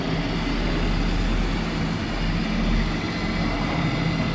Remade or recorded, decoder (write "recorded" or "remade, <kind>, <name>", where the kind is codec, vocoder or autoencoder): recorded